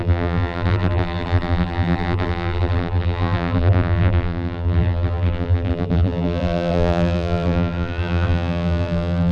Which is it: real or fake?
fake